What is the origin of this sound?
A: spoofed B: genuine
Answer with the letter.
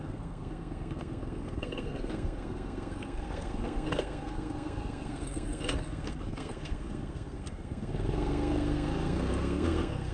A